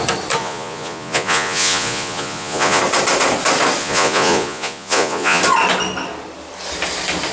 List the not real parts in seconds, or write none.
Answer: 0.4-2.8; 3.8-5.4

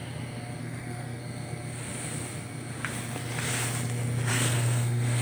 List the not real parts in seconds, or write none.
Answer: 0.6-1.2; 4.3-5.2

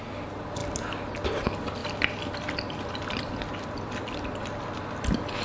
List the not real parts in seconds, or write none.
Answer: 1.8-5.0

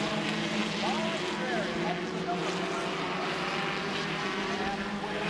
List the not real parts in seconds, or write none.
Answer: none

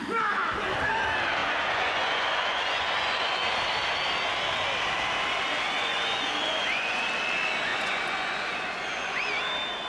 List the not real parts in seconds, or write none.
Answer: 1.4-3.5; 5.8-7.0; 7.7-9.4

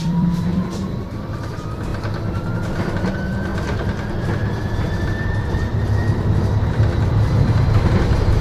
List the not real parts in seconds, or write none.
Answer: 0.0-3.5; 4.7-8.4